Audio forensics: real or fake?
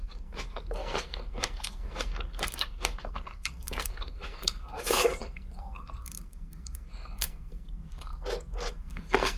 fake